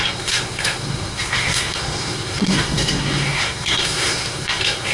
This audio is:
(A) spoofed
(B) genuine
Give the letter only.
A